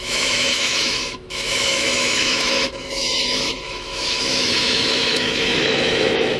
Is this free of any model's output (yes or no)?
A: no